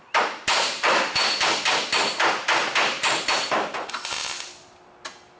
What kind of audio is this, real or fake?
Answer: real